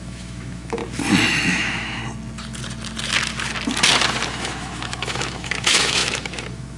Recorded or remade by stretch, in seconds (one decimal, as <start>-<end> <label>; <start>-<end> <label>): 0.0-0.8 remade; 0.8-1.5 recorded; 1.5-2.0 remade; 2.0-4.3 recorded; 4.3-6.8 remade